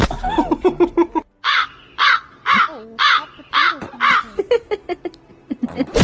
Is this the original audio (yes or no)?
yes